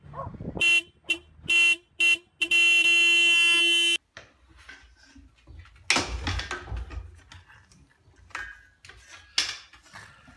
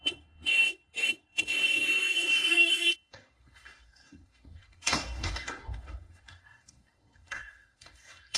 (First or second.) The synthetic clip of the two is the second